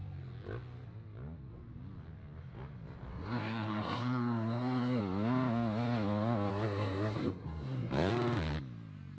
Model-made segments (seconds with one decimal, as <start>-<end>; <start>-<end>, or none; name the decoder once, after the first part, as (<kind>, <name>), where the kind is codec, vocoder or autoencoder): 3.1-5.0 (codec, SNAC); 6.5-8.1